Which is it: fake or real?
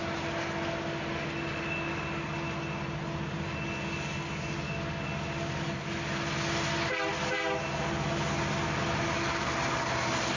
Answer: real